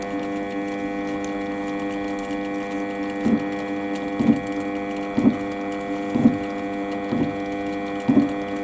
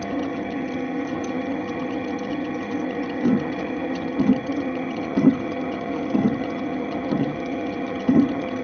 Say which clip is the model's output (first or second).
second